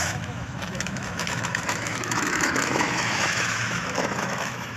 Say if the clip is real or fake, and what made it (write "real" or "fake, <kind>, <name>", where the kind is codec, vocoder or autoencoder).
fake, autoencoder, DAC-VAE